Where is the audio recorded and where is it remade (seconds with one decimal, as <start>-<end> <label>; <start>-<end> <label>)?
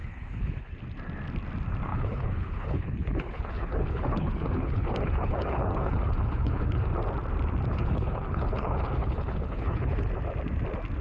0.0-0.7 remade; 0.7-1.9 recorded; 1.9-6.9 remade; 6.9-7.7 recorded; 7.7-10.1 remade; 10.1-11.0 recorded